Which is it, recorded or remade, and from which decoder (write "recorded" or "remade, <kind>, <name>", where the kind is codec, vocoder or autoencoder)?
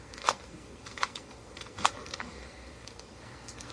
remade, codec, SNAC